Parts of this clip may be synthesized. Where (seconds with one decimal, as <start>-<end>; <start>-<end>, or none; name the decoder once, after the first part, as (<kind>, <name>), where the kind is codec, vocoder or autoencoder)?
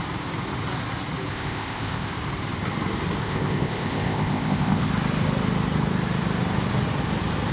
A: 1.3-2.1 (codec, ZipCodec); 3.2-4.9